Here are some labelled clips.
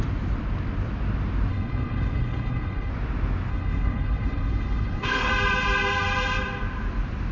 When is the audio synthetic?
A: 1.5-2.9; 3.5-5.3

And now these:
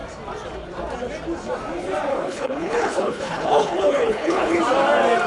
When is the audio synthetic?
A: 2.1-4.6

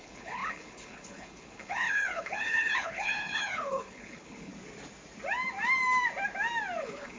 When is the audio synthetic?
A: 0.0-4.5; 6.8-7.2

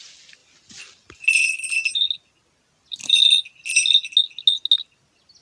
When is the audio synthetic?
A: none

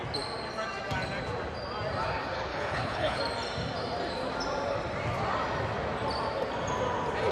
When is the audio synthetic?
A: 2.5-3.2

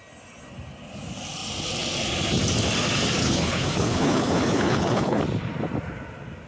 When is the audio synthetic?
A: 3.2-5.2

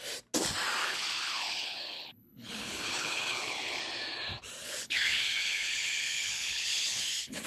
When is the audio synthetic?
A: 0.8-3.8; 4.6-7.5

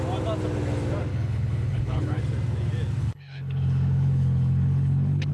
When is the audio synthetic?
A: 1.1-2.2; 3.0-5.3